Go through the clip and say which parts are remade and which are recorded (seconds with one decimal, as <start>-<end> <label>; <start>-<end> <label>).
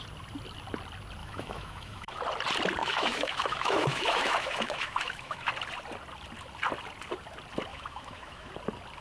0.0-1.2 recorded; 1.2-2.2 remade; 2.2-2.8 recorded; 2.8-5.5 remade; 5.5-7.7 recorded; 7.7-8.5 remade; 8.5-9.0 recorded